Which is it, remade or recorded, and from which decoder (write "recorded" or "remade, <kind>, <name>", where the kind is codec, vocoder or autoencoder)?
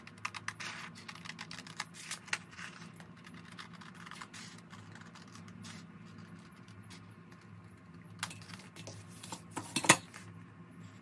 recorded